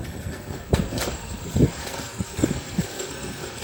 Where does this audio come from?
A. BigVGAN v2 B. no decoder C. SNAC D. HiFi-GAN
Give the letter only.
C